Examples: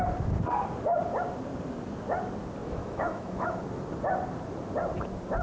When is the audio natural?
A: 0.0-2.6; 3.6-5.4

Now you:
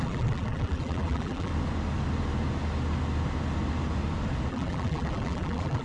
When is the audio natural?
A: 1.5-4.5

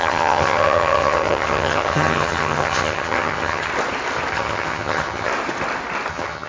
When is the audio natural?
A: 3.7-4.3; 5.3-6.1

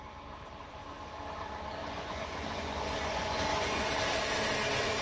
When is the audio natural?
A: 0.0-1.8; 3.9-5.0

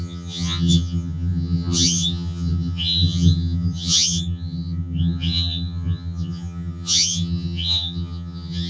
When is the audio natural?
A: none

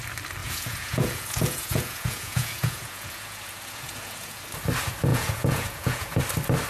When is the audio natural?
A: 0.0-0.4; 4.4-5.1; 6.2-6.7